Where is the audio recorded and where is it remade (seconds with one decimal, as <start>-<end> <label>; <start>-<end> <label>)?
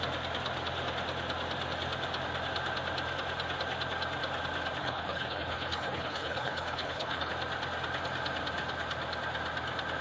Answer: 0.0-4.8 recorded; 4.8-7.3 remade; 7.3-10.0 recorded